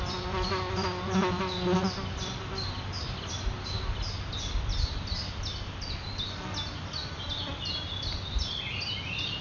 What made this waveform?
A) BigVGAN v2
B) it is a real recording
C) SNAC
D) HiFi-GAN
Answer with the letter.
B